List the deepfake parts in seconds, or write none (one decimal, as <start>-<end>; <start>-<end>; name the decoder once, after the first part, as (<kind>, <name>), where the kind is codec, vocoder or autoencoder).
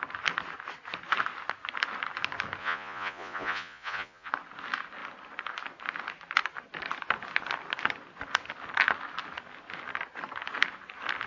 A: 2.6-4.3 (vocoder, Vocos)